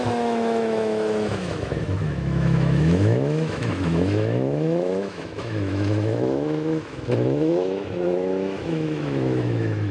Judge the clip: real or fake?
fake